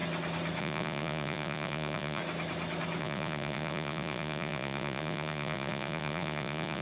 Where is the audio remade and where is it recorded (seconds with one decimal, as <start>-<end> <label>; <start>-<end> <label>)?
0.0-0.6 recorded; 0.6-2.2 remade; 2.2-3.0 recorded; 3.0-6.8 remade